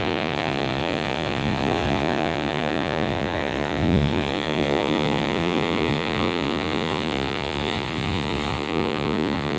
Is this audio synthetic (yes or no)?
yes